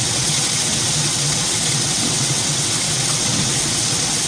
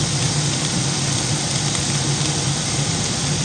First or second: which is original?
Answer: second